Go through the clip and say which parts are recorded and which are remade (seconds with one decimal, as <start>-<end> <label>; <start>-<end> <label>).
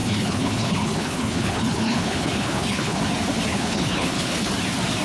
0.0-3.0 remade; 3.0-3.5 recorded; 3.5-4.5 remade; 4.5-5.0 recorded